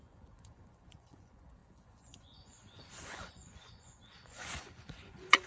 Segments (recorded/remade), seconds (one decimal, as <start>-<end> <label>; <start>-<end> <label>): 0.0-5.5 remade